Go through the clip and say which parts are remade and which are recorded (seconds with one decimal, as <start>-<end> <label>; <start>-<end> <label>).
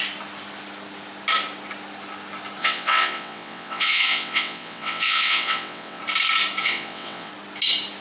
0.0-2.6 recorded; 2.6-6.0 remade; 6.0-6.6 recorded; 6.6-7.3 remade; 7.3-8.0 recorded